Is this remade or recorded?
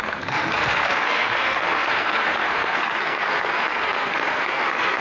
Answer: remade